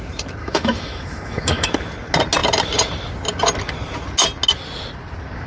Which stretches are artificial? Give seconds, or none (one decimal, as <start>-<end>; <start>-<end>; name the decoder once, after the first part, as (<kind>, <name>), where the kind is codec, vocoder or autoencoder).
0.4-1.7 (autoencoder, DAC-VAE)